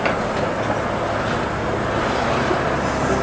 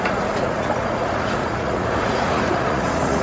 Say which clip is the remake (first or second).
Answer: second